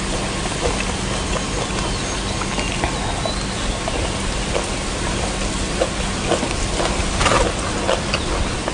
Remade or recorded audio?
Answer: recorded